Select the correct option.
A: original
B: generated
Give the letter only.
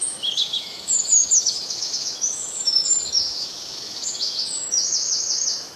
B